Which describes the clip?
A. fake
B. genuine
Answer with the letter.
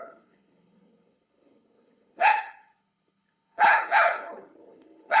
A